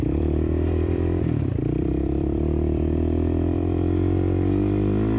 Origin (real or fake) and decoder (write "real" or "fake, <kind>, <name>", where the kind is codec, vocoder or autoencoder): fake, vocoder, BigVGAN v2